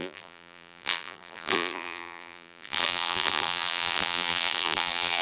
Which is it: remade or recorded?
remade